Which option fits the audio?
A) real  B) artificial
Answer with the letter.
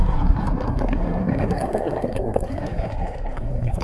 B